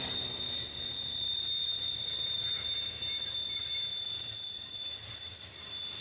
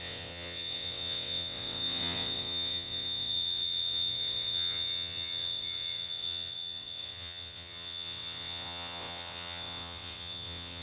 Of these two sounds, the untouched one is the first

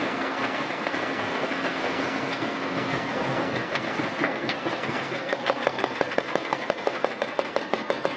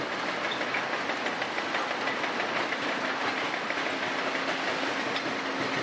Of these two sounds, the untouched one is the second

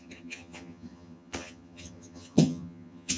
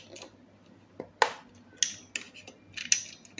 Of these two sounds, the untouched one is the second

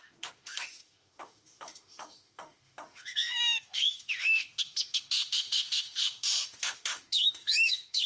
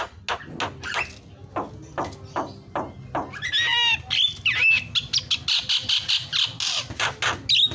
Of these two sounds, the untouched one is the second